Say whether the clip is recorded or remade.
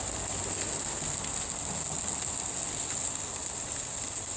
recorded